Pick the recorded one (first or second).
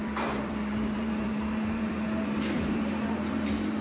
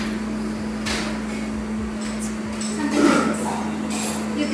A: second